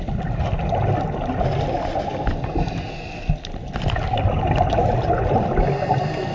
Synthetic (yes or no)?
no